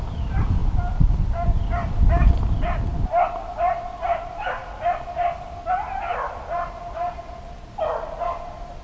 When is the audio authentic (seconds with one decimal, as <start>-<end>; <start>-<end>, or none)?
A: 0.0-8.8